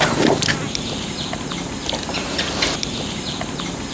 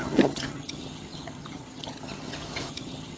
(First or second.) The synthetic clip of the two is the second